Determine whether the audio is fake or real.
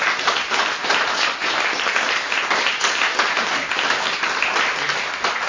real